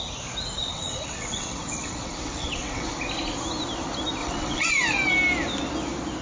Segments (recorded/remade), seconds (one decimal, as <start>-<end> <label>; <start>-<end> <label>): 0.0-0.6 recorded; 0.6-2.9 remade; 2.9-4.2 recorded; 4.2-4.7 remade; 4.7-6.2 recorded